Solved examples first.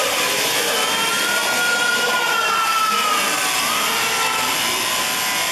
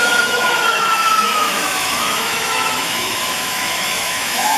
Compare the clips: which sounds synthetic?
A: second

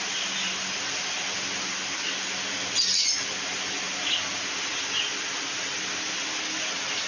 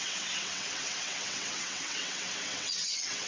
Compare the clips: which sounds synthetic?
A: second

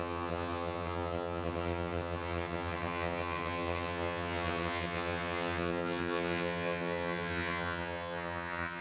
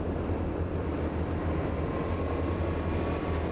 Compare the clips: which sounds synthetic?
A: first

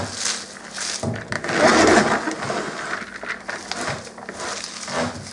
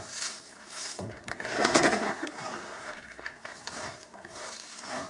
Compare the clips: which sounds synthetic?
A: second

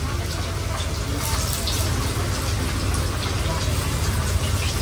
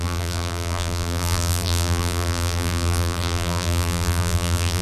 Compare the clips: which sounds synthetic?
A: second